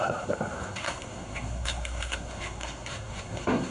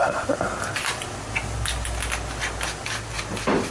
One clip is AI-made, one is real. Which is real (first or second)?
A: second